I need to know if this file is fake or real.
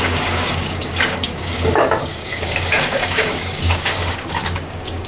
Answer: fake